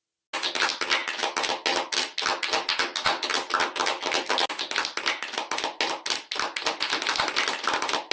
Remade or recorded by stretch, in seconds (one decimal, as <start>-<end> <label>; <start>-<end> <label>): 0.0-8.1 recorded